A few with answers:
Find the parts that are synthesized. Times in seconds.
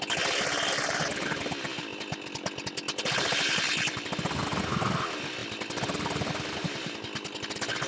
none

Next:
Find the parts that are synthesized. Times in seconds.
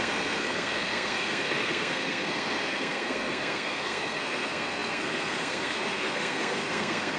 0.0-7.2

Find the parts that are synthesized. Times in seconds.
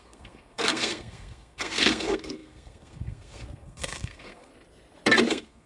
0.0-4.5; 5.3-5.7